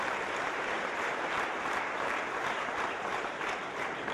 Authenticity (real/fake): fake